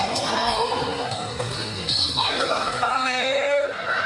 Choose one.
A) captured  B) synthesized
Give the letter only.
B